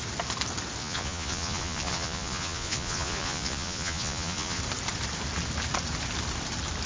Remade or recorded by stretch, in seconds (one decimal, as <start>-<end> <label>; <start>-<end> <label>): 0.0-0.8 recorded; 0.8-4.6 remade; 4.6-6.9 recorded